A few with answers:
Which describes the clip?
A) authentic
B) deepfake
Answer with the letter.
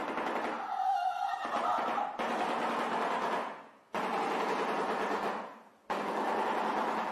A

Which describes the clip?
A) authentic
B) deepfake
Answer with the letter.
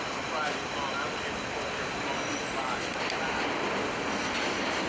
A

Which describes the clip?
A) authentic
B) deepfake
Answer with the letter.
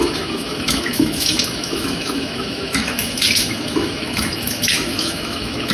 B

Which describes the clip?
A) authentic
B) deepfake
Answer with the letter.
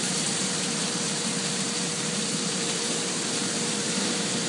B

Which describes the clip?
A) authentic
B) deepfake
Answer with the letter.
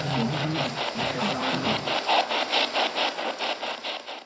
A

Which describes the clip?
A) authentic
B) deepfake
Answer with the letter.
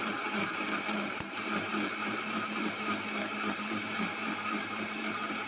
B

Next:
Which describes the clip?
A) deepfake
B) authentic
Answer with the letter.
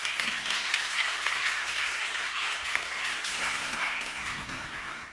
A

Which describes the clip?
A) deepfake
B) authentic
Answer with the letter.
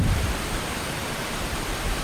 A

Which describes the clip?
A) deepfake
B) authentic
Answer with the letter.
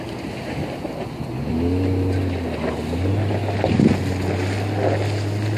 B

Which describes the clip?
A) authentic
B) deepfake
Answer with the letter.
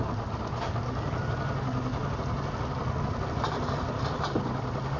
A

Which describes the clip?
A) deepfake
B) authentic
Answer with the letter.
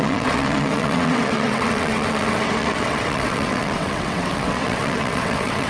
A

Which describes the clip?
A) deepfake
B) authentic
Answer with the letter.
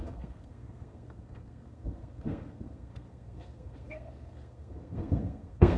A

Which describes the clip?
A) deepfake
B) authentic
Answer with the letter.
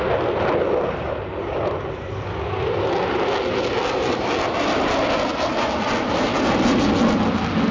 B